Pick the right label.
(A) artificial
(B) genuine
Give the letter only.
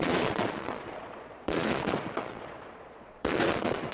A